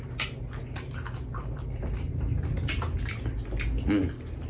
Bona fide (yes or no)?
yes